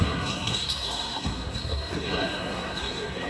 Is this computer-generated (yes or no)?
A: yes